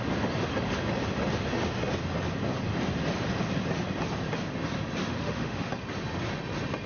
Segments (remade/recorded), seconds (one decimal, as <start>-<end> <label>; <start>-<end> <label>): 0.0-5.0 recorded; 5.0-5.7 remade; 5.7-6.9 recorded

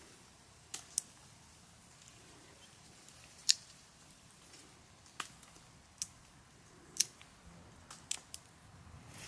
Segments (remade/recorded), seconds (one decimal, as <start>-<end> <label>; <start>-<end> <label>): 0.0-0.7 remade; 0.7-2.1 recorded; 2.1-4.6 remade; 4.6-8.7 recorded; 8.7-9.3 remade

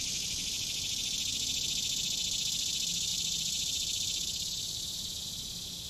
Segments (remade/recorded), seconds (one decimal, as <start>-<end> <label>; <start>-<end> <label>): 0.0-3.1 recorded; 3.1-4.8 remade; 4.8-5.9 recorded

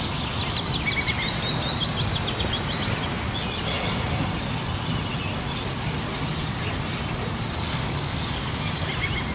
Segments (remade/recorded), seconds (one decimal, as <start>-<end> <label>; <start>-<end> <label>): 0.0-7.7 recorded; 7.7-8.7 remade; 8.7-9.3 recorded